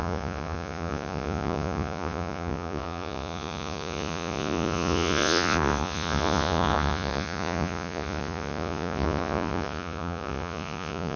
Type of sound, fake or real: fake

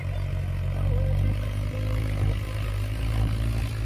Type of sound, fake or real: real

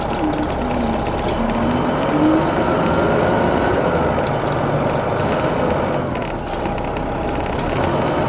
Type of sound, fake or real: real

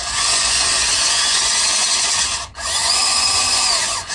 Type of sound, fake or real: fake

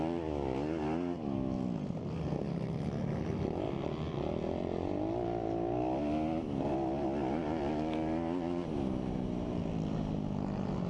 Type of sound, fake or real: real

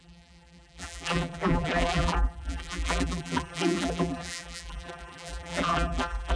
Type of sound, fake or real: fake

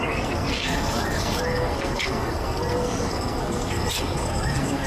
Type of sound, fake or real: fake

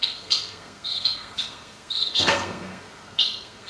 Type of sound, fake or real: fake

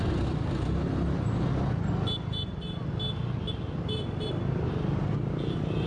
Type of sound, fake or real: real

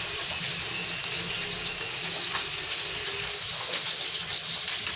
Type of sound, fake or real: real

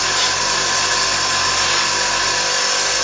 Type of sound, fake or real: real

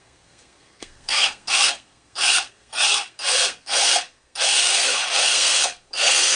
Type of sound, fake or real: fake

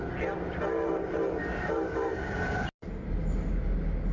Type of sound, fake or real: real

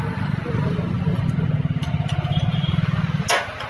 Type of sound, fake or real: real